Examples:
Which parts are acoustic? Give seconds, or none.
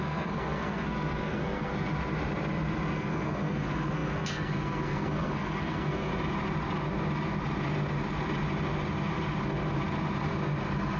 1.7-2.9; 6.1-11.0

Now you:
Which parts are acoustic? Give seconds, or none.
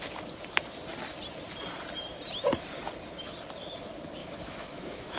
0.0-4.2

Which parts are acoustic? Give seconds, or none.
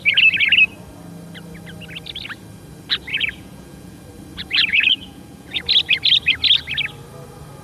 0.0-3.1; 4.0-4.7; 5.6-7.6